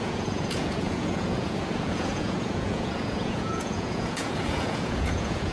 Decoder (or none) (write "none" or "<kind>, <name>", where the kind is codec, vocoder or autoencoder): vocoder, Vocos